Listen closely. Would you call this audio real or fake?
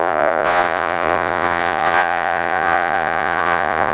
fake